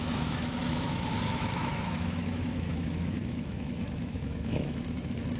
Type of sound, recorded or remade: remade